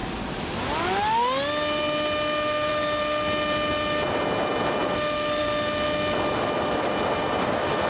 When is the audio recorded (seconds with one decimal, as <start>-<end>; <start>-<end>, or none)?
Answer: 0.0-7.9